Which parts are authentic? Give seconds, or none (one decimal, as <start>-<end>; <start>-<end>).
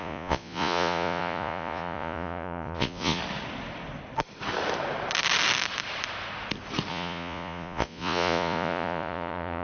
3.2-6.9